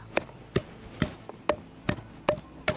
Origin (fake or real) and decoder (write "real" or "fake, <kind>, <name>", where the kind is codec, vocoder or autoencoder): real